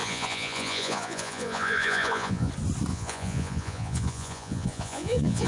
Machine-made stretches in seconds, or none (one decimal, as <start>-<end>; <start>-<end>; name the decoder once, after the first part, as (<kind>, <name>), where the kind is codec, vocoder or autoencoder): 0.0-2.5 (vocoder, Vocos); 2.9-5.5